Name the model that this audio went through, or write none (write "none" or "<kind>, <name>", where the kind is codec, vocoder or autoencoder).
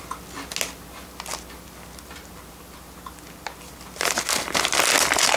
none